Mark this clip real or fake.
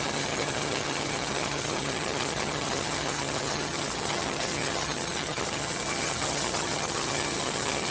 fake